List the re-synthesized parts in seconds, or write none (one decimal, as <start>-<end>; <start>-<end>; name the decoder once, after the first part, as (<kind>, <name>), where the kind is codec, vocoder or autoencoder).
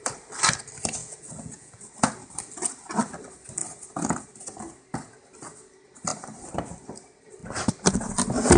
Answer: 1.0-1.8 (vocoder, Vocos)